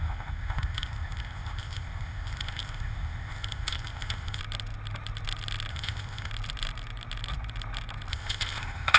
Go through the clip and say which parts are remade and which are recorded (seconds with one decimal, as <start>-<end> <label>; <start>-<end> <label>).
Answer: 0.0-4.4 remade; 4.4-5.7 recorded; 5.7-6.3 remade; 6.3-8.1 recorded; 8.1-9.0 remade